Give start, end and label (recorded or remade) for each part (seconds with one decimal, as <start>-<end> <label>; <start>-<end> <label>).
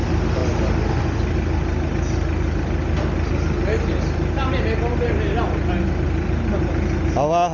0.0-7.5 recorded